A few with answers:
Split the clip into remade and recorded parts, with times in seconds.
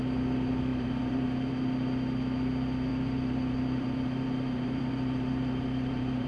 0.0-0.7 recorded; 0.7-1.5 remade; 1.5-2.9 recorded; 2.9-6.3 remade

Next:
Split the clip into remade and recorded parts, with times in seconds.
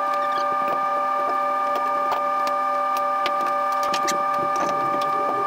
0.0-5.5 recorded